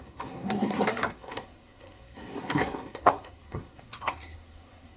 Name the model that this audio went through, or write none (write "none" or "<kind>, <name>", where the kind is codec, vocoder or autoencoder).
codec, SNAC